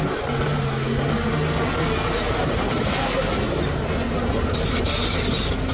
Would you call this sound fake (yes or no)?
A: no